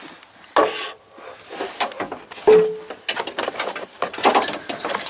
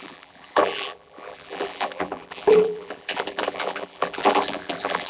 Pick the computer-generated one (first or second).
second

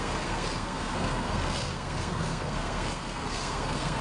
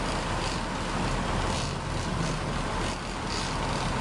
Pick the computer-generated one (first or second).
first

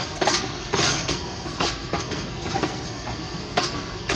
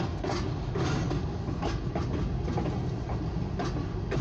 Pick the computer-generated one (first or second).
first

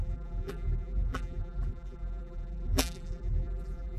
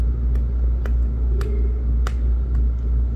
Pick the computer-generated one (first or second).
first